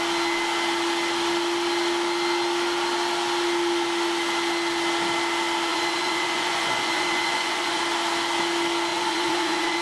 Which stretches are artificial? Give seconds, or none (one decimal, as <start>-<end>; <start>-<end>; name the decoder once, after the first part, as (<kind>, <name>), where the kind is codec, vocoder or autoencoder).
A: 5.7-7.8 (vocoder, Vocos); 8.9-9.8